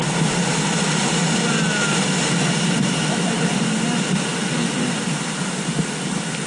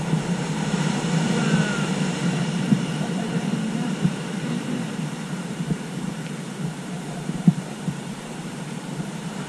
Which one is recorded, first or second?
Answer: first